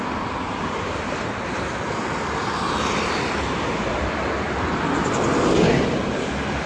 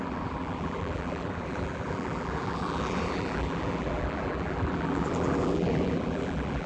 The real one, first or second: first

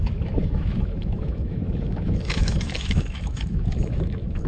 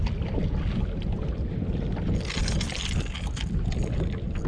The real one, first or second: second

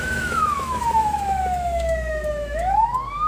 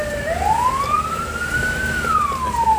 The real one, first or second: second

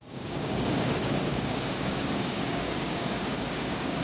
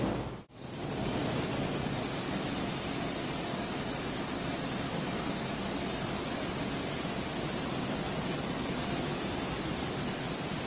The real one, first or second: second